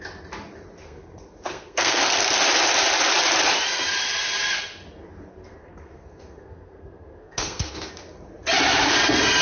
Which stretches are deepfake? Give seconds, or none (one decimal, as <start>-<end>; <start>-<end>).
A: 0.8-2.3; 5.3-7.9